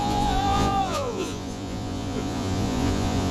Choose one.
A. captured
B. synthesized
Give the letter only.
B